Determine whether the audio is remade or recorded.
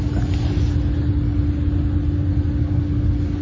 recorded